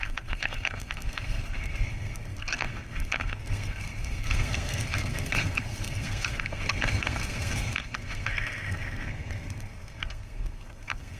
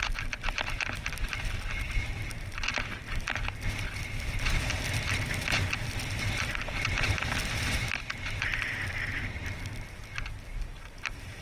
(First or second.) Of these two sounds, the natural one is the second